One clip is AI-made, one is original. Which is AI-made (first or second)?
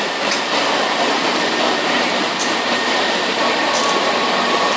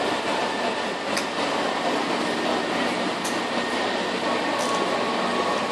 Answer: first